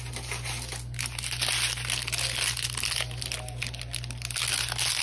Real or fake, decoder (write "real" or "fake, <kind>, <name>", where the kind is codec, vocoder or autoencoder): real